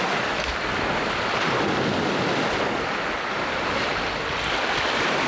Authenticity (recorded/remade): recorded